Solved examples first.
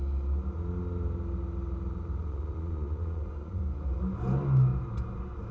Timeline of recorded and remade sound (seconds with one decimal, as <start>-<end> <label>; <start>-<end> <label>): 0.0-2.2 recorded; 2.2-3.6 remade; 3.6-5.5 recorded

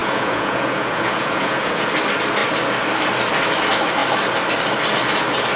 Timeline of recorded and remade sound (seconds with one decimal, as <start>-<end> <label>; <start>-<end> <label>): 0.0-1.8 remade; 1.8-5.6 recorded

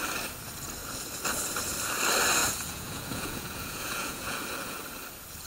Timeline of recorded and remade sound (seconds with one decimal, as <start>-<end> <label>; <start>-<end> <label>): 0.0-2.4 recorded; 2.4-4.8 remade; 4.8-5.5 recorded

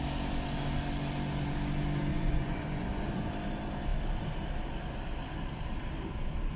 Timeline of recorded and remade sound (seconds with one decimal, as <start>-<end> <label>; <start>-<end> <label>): 0.0-2.1 recorded; 2.1-3.3 remade; 3.3-6.6 recorded

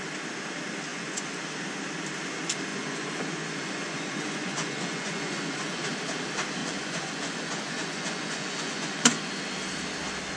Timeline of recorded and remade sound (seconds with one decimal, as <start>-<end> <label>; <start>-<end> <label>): 0.0-0.9 recorded; 0.9-1.4 remade; 1.4-2.7 recorded; 2.7-5.8 remade; 5.8-6.6 recorded; 6.6-9.3 remade; 9.3-10.4 recorded